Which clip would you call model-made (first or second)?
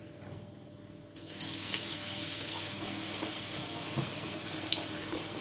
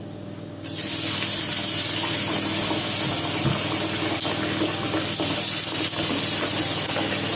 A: first